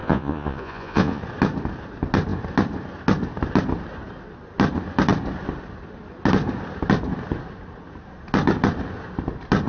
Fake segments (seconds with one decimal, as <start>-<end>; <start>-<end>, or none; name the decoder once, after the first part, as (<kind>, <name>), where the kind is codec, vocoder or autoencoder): 0.0-1.2 (vocoder, Vocos)